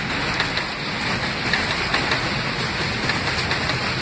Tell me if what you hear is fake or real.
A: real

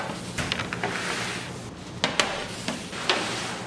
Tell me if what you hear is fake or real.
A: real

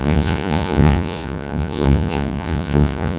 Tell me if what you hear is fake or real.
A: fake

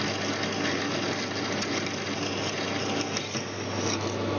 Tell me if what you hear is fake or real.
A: real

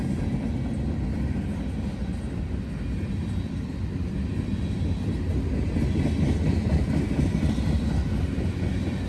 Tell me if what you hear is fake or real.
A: real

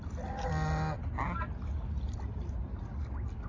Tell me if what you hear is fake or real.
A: real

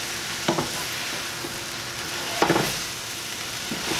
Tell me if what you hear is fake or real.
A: real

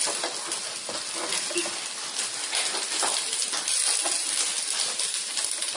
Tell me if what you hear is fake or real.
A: real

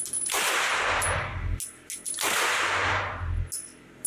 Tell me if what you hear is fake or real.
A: real